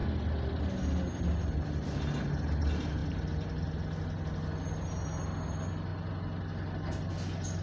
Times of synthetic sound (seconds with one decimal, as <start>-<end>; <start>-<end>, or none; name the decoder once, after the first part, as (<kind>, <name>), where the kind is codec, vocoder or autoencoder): none